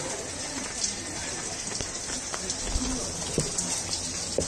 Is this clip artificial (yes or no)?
no